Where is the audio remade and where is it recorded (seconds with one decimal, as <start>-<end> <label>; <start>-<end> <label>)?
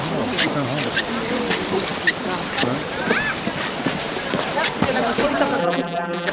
0.0-5.6 recorded; 5.6-6.3 remade